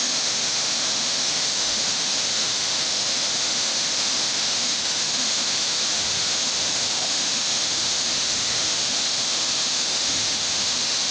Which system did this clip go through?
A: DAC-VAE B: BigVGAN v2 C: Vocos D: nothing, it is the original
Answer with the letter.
A